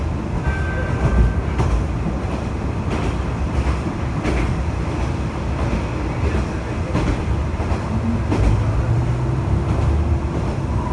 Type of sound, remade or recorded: recorded